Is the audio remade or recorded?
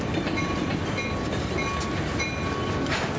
recorded